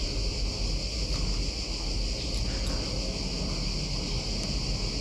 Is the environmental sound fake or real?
real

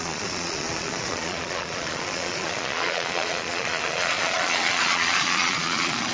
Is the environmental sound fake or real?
fake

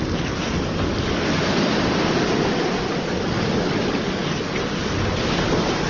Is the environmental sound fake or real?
real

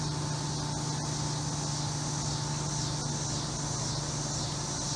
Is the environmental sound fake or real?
real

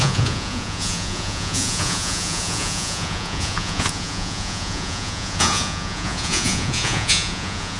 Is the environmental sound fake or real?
fake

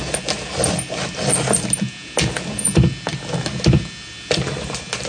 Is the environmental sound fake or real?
real